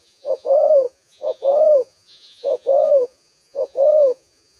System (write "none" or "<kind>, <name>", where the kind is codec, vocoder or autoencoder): vocoder, Vocos